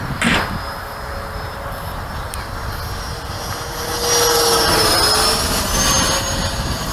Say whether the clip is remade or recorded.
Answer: recorded